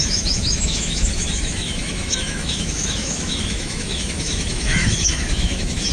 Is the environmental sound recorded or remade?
remade